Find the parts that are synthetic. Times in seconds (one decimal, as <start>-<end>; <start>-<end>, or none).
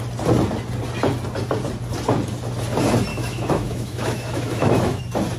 3.1-5.0